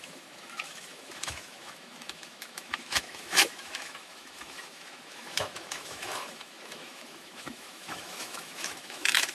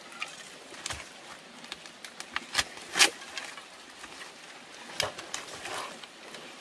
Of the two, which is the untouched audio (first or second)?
second